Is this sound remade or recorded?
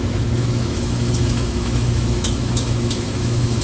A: remade